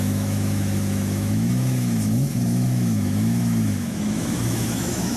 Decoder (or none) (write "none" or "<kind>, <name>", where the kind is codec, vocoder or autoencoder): autoencoder, DAC-VAE